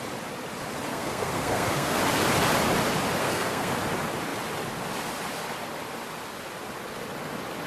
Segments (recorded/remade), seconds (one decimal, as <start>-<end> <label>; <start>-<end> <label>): 0.0-0.9 recorded; 0.9-2.0 remade; 2.0-3.2 recorded; 3.2-3.7 remade; 3.7-7.7 recorded